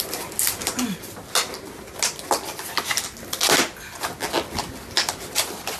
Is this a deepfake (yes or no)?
no